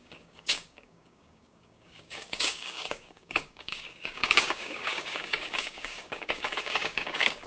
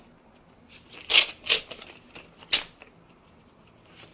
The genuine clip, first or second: second